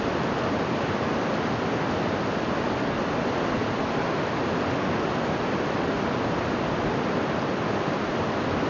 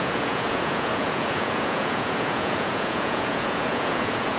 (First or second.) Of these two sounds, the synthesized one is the second